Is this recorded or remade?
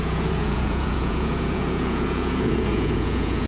remade